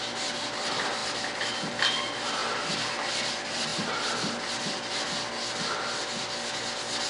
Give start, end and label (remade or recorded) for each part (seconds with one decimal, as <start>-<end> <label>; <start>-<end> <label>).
0.0-7.1 recorded